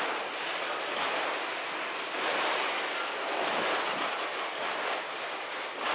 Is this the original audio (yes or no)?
yes